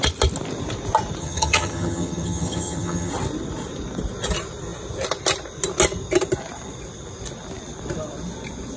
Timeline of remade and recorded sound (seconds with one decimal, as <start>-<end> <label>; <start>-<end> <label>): 0.0-1.2 recorded; 1.2-3.1 remade; 3.1-8.8 recorded

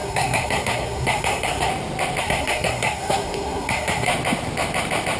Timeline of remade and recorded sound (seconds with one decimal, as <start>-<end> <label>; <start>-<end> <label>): 0.0-1.7 remade; 1.7-2.2 recorded; 2.2-4.1 remade; 4.1-5.2 recorded